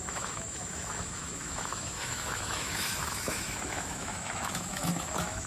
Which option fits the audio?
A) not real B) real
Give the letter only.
A